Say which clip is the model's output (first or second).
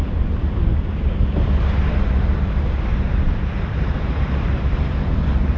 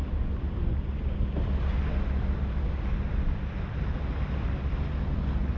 first